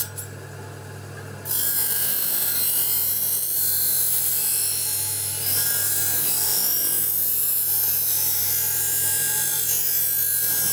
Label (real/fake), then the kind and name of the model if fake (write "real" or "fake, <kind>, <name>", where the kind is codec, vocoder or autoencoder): real